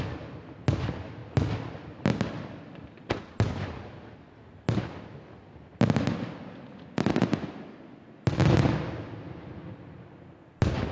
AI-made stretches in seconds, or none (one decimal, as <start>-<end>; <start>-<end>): none